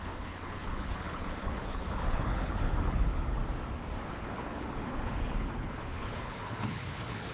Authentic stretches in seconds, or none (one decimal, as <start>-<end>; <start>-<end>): 3.4-4.1